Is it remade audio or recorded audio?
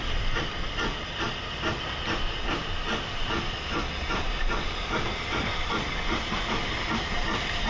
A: recorded